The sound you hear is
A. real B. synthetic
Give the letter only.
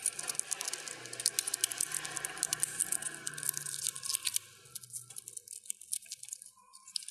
A